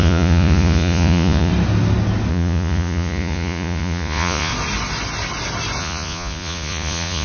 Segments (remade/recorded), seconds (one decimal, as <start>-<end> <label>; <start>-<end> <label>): 0.0-1.5 remade; 1.5-2.3 recorded; 2.3-4.5 remade; 4.5-5.8 recorded; 5.8-7.2 remade